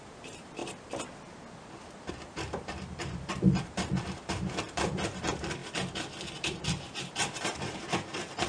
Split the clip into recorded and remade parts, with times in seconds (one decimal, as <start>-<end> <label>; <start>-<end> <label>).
0.0-0.6 remade; 0.6-2.1 recorded; 2.1-5.6 remade; 5.6-6.3 recorded; 6.3-8.5 remade